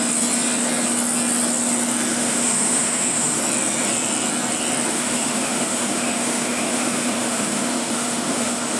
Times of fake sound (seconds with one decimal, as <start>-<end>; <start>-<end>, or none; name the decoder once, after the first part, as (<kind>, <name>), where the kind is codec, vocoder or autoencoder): 2.1-3.4 (autoencoder, DAC-VAE); 4.9-8.8